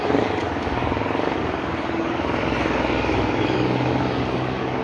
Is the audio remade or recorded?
remade